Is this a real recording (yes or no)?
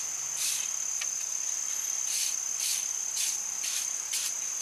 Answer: yes